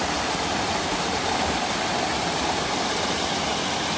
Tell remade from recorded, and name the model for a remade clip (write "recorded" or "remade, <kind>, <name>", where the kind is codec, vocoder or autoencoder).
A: recorded